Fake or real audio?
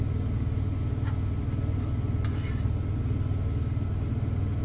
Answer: real